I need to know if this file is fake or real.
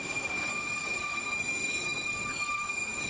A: fake